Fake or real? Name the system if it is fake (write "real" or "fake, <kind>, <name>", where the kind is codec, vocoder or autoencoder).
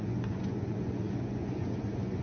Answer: fake, vocoder, Vocos